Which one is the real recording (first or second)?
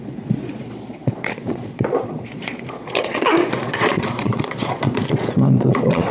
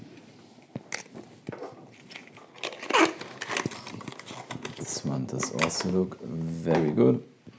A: second